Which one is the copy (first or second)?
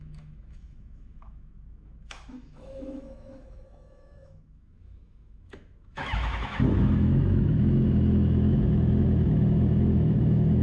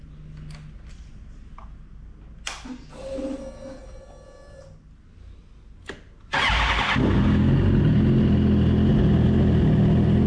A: first